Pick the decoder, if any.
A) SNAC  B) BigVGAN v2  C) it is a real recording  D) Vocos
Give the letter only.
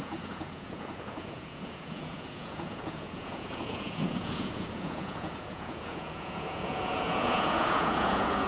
D